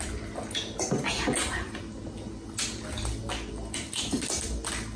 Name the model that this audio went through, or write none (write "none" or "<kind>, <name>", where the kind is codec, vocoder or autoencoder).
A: none